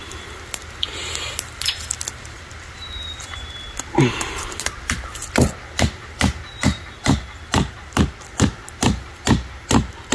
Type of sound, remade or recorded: recorded